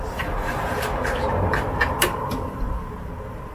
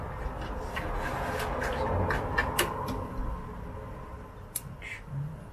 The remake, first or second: first